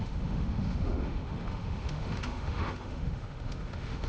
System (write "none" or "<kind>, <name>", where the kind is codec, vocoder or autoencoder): autoencoder, DAC-VAE